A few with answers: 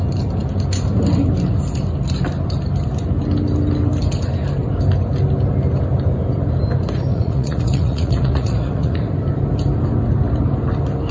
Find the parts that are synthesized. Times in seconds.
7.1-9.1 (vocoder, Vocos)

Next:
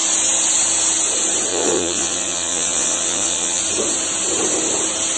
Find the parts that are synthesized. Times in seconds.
1.5-3.6 (vocoder, WaveNeXt)

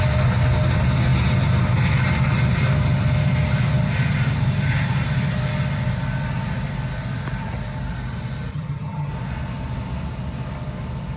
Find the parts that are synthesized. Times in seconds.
8.5-9.1 (vocoder, HiFi-GAN)

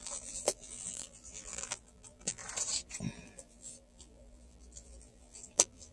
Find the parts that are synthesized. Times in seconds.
0.0-2.4 (vocoder, BigVGAN v2); 3.0-5.9

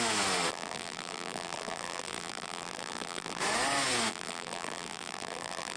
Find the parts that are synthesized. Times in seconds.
0.5-3.4 (vocoder, BigVGAN v2); 4.1-5.8

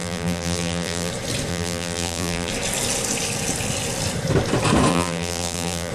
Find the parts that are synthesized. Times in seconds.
0.0-1.1 (vocoder, BigVGAN v2); 1.5-2.5; 4.9-5.9